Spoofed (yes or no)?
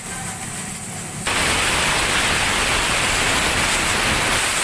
no